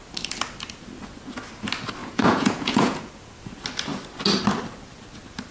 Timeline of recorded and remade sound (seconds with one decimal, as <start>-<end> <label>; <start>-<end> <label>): 0.0-2.0 recorded; 2.0-3.1 remade; 3.1-5.5 recorded